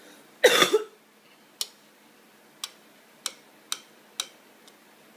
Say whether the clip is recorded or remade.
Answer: recorded